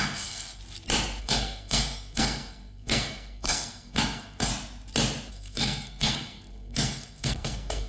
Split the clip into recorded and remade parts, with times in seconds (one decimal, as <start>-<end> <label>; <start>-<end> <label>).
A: 0.0-0.6 remade; 0.6-1.2 recorded; 1.2-4.5 remade; 4.5-5.3 recorded; 5.3-7.9 remade